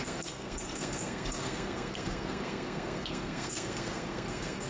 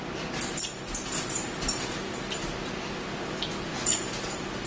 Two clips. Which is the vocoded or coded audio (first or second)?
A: first